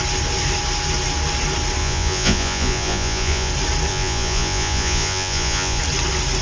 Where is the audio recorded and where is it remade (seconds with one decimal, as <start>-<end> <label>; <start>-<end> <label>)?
0.0-1.8 recorded; 1.8-3.5 remade; 3.5-3.9 recorded; 3.9-5.8 remade; 5.8-6.4 recorded